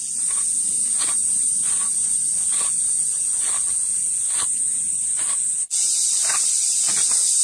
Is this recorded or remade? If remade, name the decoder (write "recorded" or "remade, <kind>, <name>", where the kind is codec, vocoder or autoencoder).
recorded